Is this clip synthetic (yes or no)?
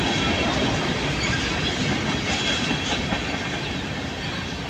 no